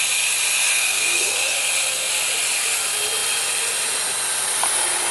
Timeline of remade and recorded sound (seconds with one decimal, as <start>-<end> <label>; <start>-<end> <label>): 0.0-0.7 recorded; 0.7-1.7 remade; 1.7-5.1 recorded